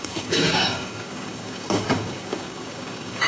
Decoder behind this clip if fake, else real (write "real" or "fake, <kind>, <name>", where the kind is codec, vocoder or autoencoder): fake, codec, DAC